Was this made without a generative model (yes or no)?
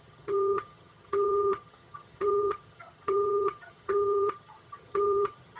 no